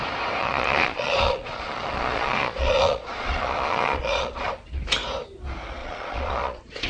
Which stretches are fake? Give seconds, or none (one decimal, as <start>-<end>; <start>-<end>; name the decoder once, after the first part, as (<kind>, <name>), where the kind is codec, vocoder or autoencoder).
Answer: 0.4-4.5 (vocoder, Vocos); 5.8-6.9